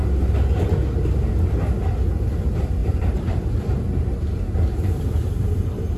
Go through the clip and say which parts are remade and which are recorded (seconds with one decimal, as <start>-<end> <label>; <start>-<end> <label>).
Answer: 0.0-2.8 recorded; 2.8-6.0 remade